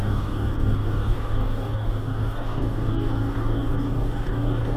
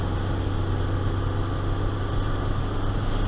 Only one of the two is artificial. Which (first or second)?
first